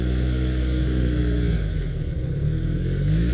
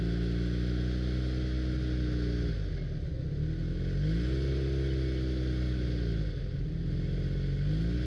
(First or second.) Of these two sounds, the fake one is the first